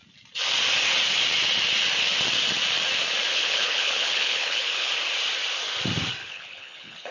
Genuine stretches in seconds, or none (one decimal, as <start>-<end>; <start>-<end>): 0.0-3.3; 4.9-6.2